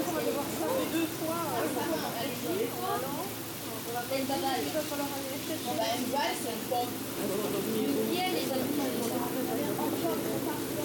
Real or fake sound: real